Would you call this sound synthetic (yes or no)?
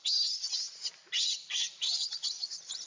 no